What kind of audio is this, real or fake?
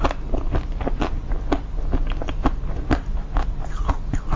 real